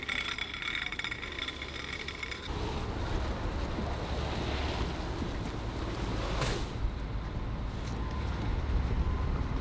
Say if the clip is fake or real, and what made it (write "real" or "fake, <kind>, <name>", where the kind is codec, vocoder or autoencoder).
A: real